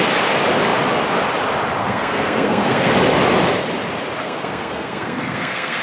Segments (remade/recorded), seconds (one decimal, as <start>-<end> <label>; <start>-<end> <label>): 0.0-1.8 recorded; 1.8-2.9 remade; 2.9-4.2 recorded; 4.2-5.8 remade